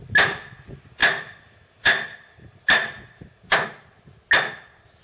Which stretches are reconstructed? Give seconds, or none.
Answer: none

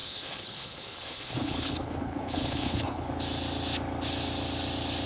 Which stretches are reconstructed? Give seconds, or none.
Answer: 0.0-3.1 (codec, HILCodec)

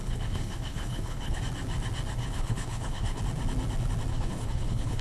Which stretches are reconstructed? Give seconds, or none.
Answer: 0.0-1.4 (codec, HILCodec); 2.2-3.2; 4.1-5.0

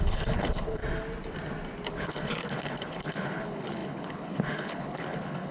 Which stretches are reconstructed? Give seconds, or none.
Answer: 0.0-0.8 (codec, HILCodec); 1.9-5.5

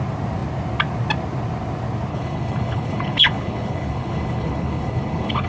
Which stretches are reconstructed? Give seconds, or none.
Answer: 2.1-5.5 (codec, HILCodec)